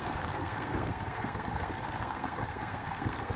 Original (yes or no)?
no